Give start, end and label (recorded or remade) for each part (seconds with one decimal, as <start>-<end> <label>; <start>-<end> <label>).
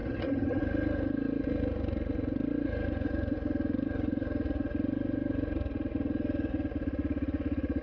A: 0.0-0.6 remade; 0.6-7.8 recorded